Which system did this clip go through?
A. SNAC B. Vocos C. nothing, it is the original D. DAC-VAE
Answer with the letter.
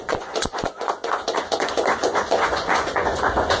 B